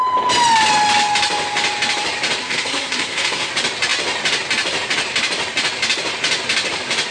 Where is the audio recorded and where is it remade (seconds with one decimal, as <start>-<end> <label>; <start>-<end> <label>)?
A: 0.0-2.4 recorded; 2.4-3.5 remade; 3.5-7.1 recorded